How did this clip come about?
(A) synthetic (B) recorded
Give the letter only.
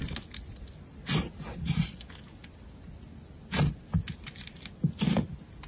B